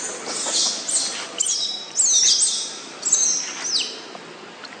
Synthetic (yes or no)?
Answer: no